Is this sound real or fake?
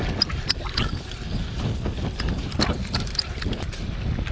real